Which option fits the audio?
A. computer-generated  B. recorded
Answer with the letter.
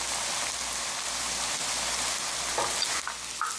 B